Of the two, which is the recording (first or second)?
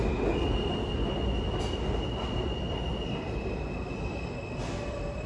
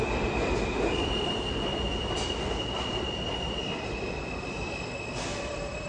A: first